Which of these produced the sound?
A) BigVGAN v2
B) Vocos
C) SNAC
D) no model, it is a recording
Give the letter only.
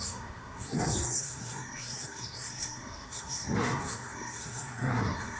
C